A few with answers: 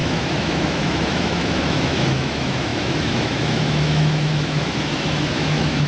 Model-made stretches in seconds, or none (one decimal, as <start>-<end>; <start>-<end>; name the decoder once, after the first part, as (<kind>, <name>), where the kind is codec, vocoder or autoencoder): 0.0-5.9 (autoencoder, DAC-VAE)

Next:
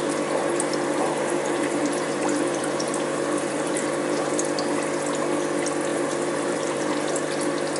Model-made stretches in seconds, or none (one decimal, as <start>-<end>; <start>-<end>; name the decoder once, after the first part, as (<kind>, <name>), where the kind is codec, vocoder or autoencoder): 0.4-4.3 (vocoder, BigVGAN v2); 5.9-6.8

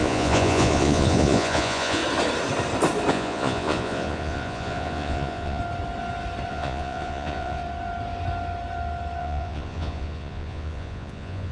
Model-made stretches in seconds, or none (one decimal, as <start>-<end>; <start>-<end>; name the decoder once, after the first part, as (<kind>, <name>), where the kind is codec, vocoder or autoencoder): 0.0-2.0 (vocoder, Vocos); 3.1-5.6; 6.5-7.6; 9.2-11.5

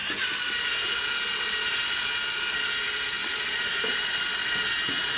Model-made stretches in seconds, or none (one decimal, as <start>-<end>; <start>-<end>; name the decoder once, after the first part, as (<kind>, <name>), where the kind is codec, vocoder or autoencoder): 3.2-4.1 (vocoder, BigVGAN v2)

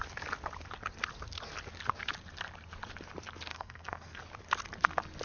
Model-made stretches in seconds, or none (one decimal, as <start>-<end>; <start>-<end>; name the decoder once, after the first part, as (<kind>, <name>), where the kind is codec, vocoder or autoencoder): 3.5-4.2 (codec, SNAC)

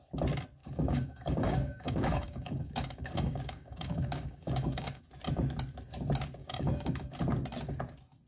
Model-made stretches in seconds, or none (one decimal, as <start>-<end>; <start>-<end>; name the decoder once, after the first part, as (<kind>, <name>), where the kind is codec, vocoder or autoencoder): 0.6-5.0 (codec, DAC); 6.4-7.2